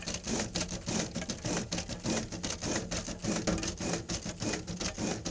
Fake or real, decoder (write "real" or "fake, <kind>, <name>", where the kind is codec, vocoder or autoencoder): real